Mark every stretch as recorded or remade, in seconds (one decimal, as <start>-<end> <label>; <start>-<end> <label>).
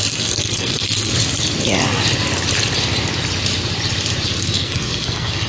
0.0-1.1 remade; 1.1-4.4 recorded; 4.4-5.5 remade